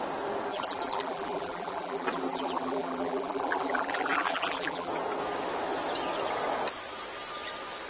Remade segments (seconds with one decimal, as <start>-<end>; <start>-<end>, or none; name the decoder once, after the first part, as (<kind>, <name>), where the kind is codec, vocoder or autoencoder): 0.5-4.9 (vocoder, BigVGAN v2)